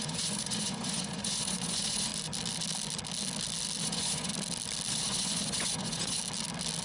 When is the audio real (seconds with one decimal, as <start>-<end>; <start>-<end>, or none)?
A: 2.1-3.8; 4.3-4.9; 6.2-6.8